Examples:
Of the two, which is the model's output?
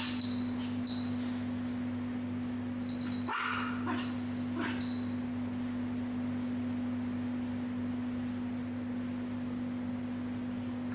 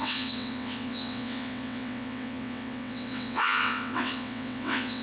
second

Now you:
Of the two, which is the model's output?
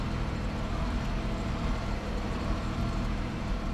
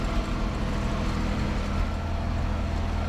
first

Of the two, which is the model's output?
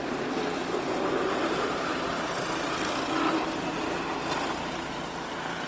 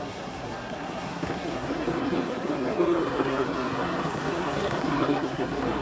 second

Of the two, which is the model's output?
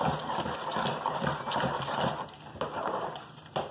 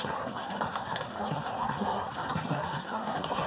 second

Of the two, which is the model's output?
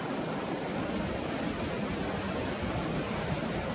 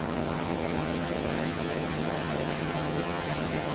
second